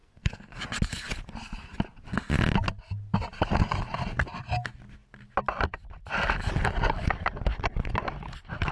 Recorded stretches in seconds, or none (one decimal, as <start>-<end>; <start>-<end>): 0.6-8.7